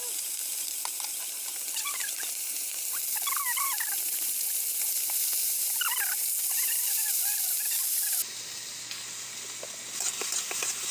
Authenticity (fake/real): real